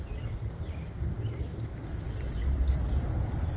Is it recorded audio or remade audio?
recorded